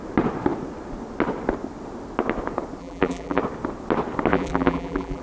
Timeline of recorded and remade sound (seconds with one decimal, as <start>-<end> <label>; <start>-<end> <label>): 0.0-2.8 recorded; 2.8-3.4 remade; 3.4-4.3 recorded; 4.3-5.2 remade